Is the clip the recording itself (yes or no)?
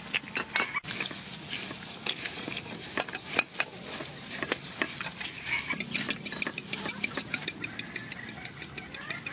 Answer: yes